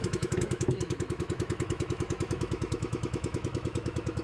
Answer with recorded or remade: remade